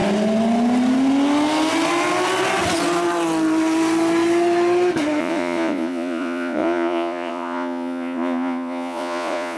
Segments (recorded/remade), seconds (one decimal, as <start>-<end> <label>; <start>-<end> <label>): 0.0-5.2 recorded; 5.2-9.6 remade